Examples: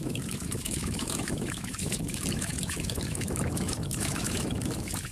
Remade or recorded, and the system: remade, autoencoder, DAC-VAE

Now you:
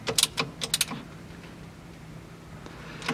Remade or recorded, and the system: recorded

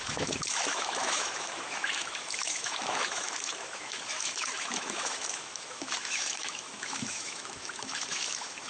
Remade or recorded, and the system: remade, autoencoder, DAC-VAE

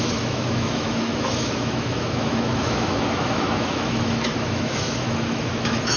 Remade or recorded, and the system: remade, autoencoder, DAC-VAE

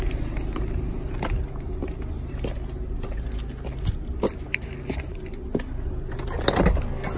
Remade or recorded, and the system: recorded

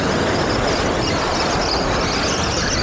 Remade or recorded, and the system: recorded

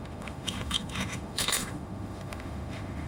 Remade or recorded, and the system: remade, autoencoder, DAC-VAE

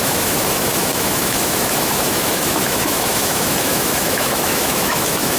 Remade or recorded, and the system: remade, autoencoder, DAC-VAE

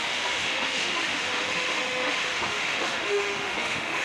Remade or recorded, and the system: remade, autoencoder, DAC-VAE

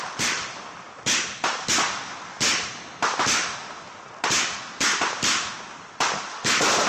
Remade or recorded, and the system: recorded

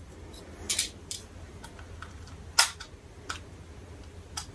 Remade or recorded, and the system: recorded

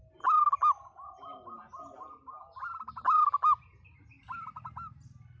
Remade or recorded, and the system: recorded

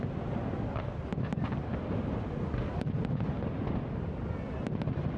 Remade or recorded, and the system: recorded